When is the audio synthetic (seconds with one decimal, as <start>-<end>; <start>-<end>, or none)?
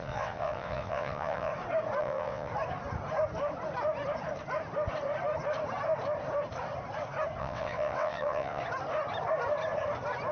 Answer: 0.0-1.5; 2.0-2.5; 7.4-8.6